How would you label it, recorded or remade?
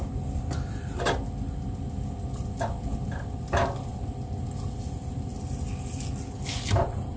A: recorded